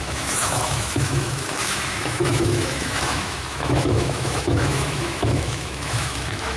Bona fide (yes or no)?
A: no